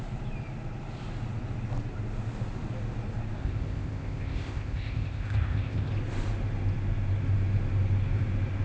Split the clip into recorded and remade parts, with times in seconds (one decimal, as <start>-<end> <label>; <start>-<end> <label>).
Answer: 0.0-3.4 recorded; 3.4-5.9 remade; 5.9-8.6 recorded